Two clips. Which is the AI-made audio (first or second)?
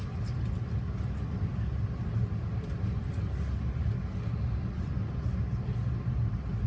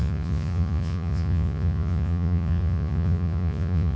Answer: second